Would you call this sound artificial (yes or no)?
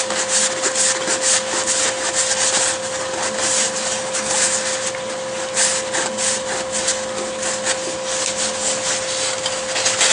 no